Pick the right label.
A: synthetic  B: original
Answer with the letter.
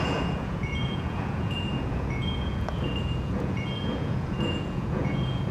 A